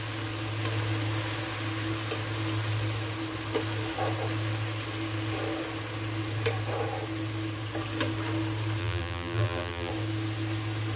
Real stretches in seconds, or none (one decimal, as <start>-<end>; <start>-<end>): 0.0-8.8; 9.9-11.0